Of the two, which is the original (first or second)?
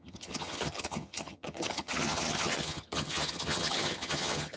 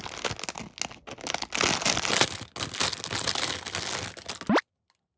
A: second